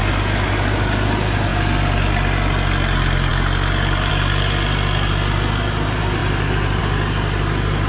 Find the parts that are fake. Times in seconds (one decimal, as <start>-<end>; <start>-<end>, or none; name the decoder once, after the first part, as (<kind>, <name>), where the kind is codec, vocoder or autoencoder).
none